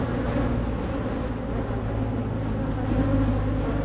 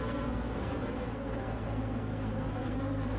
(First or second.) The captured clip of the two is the first